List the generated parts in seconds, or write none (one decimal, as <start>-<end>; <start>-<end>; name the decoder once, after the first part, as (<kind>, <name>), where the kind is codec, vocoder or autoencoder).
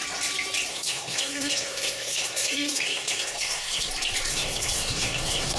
0.7-3.9 (codec, SNAC); 4.3-5.6